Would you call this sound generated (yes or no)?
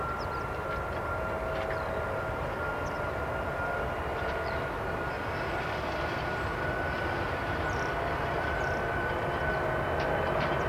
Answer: no